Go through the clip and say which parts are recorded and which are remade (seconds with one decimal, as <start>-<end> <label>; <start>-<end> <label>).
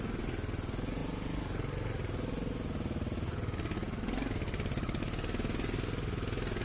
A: 0.0-6.6 recorded